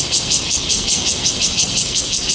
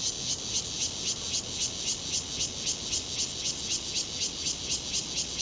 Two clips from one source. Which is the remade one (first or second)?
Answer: first